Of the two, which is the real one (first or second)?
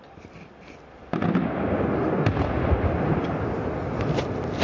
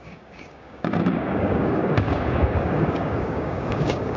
first